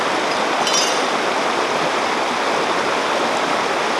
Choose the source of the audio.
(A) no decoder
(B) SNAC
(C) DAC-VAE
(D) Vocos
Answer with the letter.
A